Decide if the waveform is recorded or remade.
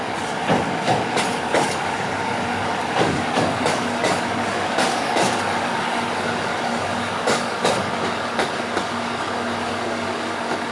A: remade